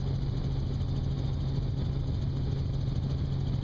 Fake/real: real